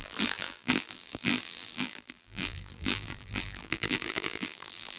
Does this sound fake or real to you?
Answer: fake